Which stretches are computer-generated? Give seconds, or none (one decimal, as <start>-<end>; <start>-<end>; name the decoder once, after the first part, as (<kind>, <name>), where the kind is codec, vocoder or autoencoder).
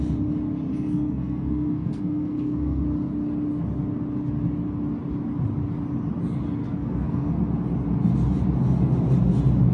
0.7-2.8 (codec, SNAC); 6.6-7.3